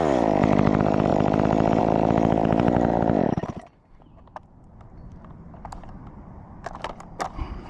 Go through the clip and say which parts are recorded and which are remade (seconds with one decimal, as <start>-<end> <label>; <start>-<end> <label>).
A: 0.0-7.7 recorded